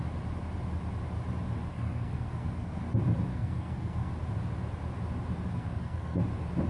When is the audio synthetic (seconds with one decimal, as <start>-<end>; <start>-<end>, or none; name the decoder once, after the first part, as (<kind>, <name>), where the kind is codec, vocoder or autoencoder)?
1.7-2.8 (codec, SNAC); 3.3-4.1; 5.5-6.2